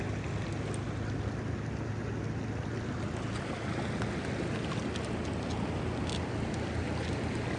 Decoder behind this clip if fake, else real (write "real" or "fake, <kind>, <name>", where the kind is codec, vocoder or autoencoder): real